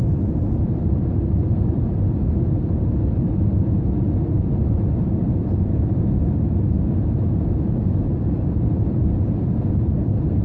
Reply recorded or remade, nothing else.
remade